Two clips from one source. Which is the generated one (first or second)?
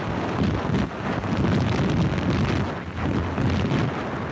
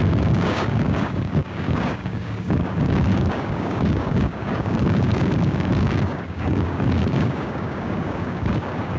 second